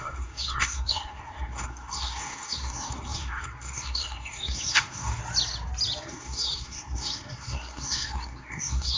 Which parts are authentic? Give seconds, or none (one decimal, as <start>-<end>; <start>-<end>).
5.2-6.1